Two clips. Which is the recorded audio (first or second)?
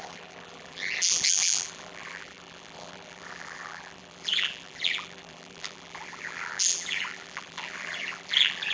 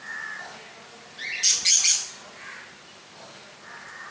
second